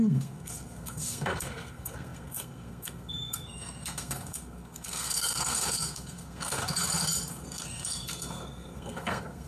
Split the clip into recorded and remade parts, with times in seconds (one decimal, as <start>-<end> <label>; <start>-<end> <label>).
0.0-6.6 remade; 6.6-7.3 recorded; 7.3-9.5 remade